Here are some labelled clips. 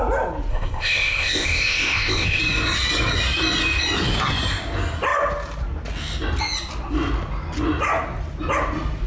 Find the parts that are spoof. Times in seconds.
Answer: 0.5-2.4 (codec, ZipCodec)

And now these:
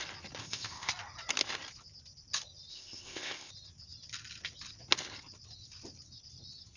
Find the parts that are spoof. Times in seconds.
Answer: 0.4-0.9 (codec, ZipCodec); 2.7-3.5

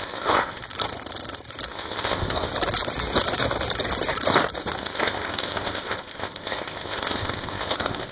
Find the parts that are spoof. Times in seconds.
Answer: 0.0-0.6 (codec, ZipCodec); 1.7-2.5; 4.8-8.1

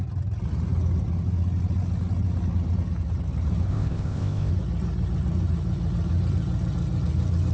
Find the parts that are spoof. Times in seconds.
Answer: 3.7-4.5 (codec, ZipCodec)

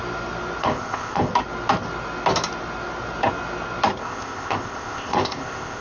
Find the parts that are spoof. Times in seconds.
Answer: 0.6-1.3 (codec, ZipCodec); 4.0-5.8

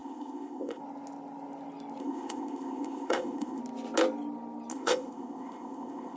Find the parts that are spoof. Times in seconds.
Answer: 0.0-0.8 (codec, ZipCodec); 2.0-3.6; 4.7-6.2

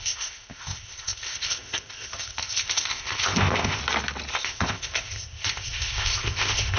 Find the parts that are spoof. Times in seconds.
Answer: 0.0-3.8 (codec, ZipCodec); 4.3-6.8

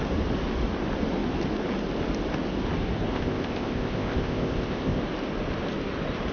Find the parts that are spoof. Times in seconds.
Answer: 3.1-5.0 (codec, ZipCodec)